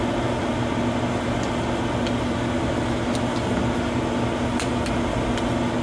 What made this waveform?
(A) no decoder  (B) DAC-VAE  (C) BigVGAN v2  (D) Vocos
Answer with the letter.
A